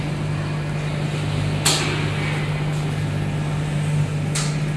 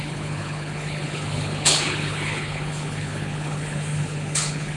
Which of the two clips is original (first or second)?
first